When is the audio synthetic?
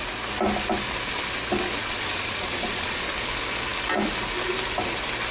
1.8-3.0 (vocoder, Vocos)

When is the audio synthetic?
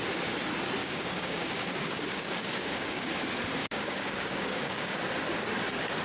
0.8-3.1 (codec, DAC); 3.6-5.0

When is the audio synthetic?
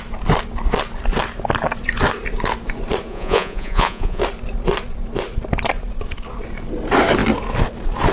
3.1-4.2 (vocoder, Vocos)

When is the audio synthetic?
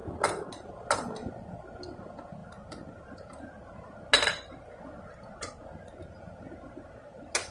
none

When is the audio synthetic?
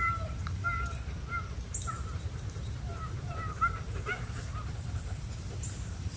0.0-0.7 (vocoder, BigVGAN v2); 1.9-6.2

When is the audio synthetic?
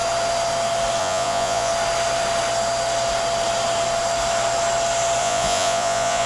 1.0-1.7 (vocoder, Vocos); 5.2-6.3